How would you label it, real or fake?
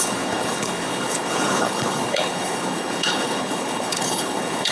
fake